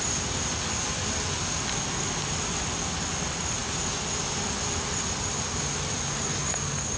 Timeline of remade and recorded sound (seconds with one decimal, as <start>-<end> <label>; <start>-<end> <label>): 0.0-7.0 recorded